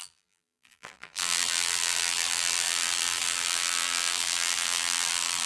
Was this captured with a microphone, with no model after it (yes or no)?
no